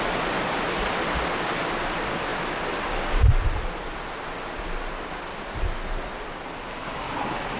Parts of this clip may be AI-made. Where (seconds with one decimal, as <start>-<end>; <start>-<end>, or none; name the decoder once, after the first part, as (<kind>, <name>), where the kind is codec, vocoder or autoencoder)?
none